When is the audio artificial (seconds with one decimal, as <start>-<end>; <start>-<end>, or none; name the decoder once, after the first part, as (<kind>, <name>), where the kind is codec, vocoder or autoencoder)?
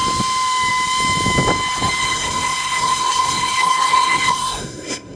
2.0-5.2 (codec, SNAC)